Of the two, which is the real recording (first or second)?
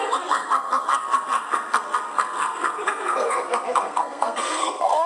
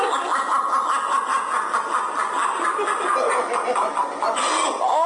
second